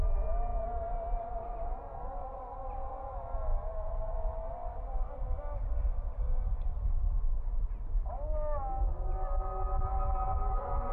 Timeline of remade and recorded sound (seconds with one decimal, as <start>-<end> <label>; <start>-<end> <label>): 0.0-10.9 recorded